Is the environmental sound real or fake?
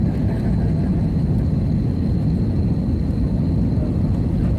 real